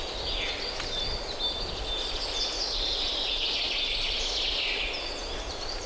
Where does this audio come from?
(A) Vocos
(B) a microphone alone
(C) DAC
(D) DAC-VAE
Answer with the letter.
B